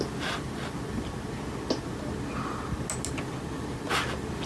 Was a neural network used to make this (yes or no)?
no